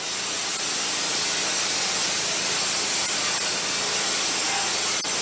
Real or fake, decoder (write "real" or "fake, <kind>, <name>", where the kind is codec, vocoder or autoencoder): real